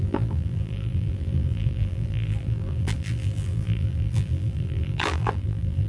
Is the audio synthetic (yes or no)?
yes